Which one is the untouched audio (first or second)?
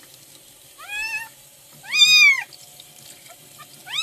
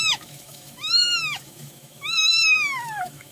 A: first